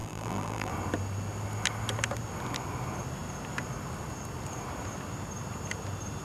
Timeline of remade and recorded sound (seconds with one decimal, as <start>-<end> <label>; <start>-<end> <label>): 0.0-0.7 remade; 0.7-6.2 recorded